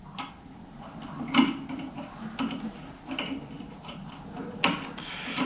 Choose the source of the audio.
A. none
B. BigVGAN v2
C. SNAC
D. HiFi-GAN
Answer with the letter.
A